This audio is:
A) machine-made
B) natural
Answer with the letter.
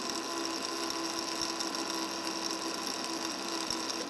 B